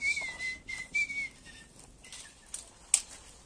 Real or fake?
real